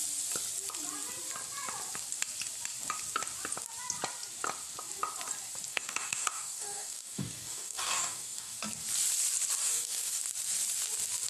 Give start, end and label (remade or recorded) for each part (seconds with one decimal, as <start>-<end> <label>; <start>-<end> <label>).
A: 0.0-5.7 recorded; 5.7-8.6 remade; 8.6-9.6 recorded; 9.6-10.2 remade; 10.2-11.3 recorded